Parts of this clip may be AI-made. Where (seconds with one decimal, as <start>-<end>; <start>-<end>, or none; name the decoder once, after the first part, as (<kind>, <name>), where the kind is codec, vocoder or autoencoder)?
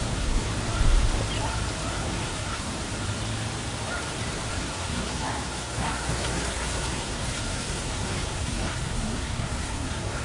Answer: 0.0-0.5 (codec, SNAC); 1.9-2.7; 4.5-10.2